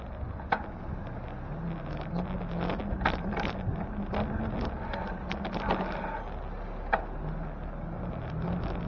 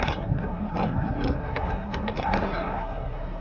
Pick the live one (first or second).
first